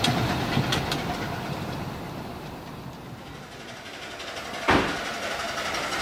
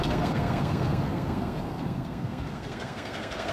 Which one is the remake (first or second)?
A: second